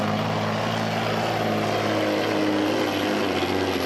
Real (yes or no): yes